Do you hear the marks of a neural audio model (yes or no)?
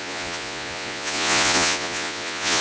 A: yes